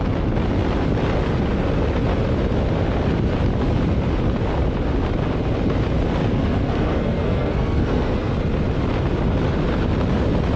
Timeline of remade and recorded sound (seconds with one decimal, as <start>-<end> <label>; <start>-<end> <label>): 0.0-6.2 recorded; 6.2-8.3 remade; 8.3-10.6 recorded